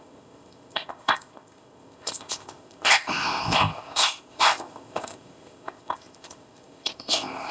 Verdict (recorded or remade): remade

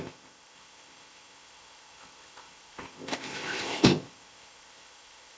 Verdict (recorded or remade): remade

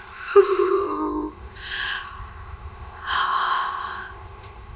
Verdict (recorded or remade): remade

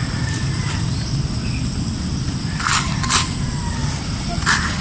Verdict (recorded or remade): recorded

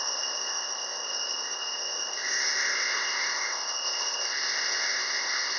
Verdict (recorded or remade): remade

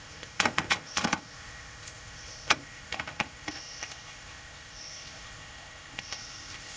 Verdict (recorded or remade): remade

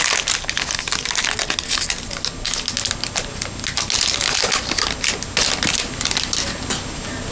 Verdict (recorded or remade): recorded